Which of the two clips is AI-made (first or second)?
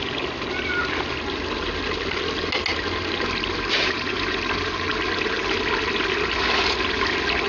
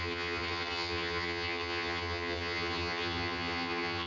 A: second